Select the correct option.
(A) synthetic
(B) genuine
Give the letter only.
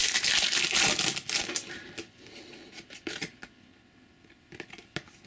B